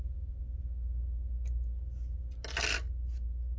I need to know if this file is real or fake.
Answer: real